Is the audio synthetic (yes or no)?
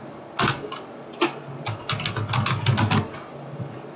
no